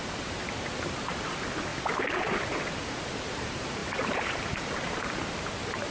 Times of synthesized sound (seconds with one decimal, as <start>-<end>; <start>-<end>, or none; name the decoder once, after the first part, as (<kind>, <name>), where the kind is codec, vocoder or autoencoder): 0.0-1.7 (vocoder, BigVGAN v2); 2.2-5.9